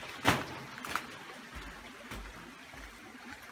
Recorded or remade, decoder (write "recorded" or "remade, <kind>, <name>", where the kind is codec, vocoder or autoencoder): recorded